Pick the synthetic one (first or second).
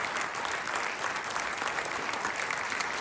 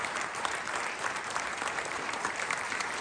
second